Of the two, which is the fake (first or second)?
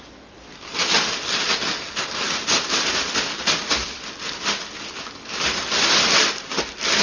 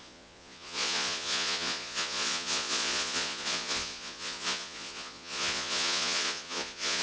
second